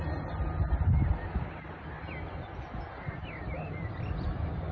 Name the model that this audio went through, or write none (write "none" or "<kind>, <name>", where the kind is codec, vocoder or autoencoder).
none